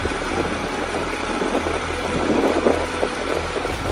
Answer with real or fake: real